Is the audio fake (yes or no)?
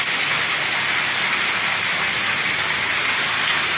no